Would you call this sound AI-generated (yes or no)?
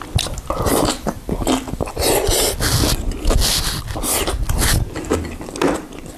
no